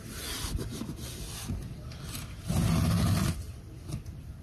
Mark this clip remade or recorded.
recorded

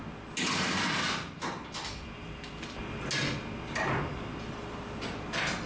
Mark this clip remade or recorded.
recorded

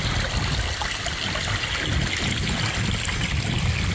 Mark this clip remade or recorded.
recorded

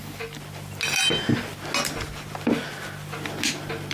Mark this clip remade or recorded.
recorded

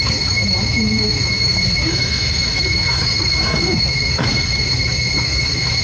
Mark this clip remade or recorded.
remade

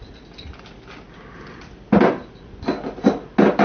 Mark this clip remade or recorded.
recorded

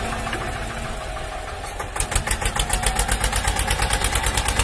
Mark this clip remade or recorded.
recorded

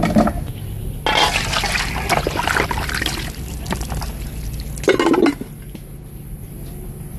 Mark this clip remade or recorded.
recorded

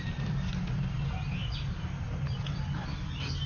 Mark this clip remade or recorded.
recorded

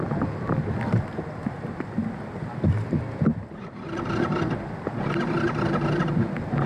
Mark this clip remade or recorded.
recorded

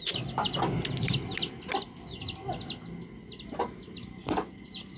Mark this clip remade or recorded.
recorded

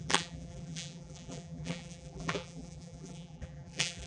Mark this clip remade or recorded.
remade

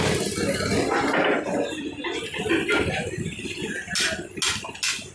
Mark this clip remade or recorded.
recorded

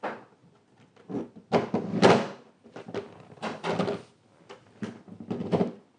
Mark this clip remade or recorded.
recorded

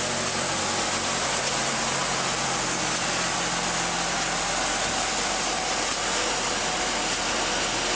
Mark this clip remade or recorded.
recorded